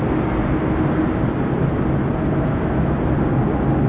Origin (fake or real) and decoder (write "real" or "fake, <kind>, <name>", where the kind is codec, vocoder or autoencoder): real